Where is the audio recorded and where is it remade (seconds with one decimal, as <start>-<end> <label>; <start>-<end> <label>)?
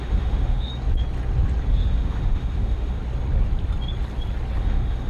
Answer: 0.0-0.7 remade; 0.7-1.7 recorded; 1.7-3.0 remade; 3.0-4.6 recorded; 4.6-5.1 remade